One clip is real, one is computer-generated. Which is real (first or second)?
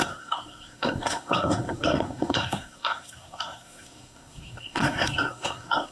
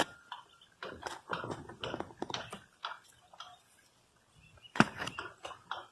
second